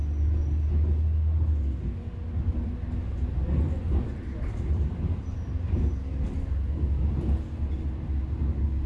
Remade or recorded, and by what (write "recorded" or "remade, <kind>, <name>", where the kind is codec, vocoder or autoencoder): recorded